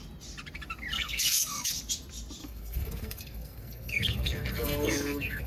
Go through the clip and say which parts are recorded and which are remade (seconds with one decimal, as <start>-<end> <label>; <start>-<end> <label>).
0.0-0.9 recorded; 0.9-1.8 remade; 1.8-2.4 recorded; 2.4-5.5 remade